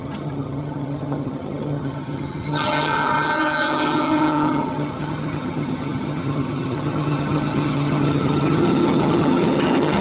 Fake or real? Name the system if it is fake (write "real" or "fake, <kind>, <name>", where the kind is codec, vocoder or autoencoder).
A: fake, vocoder, HiFi-GAN